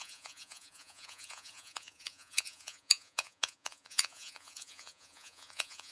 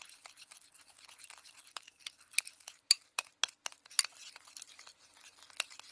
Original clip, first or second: second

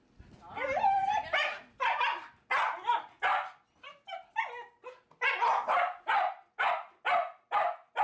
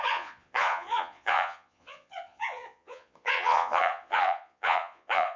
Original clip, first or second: first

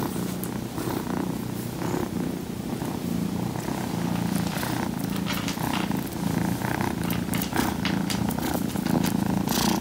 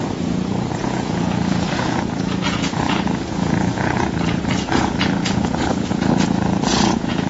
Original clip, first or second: first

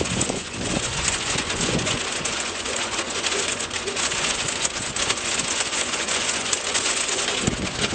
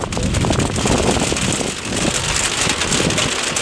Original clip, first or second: second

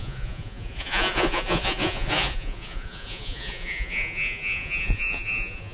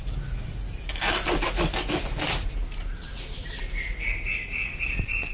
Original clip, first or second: second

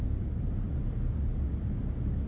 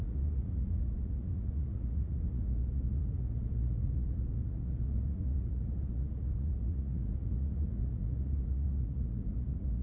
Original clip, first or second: first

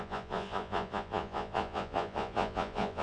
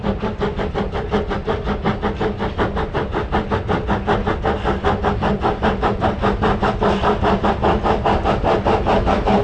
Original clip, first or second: second